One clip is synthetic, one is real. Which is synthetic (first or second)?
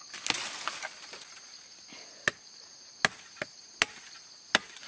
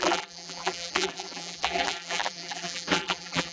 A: second